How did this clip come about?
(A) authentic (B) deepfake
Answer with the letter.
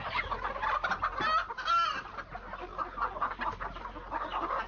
A